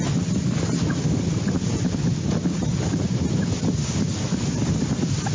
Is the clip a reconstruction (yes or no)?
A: no